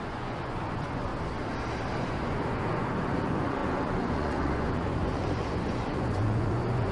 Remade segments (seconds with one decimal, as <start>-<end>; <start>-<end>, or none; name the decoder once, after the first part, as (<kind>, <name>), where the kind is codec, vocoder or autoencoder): 0.0-1.1 (vocoder, Vocos); 2.0-6.9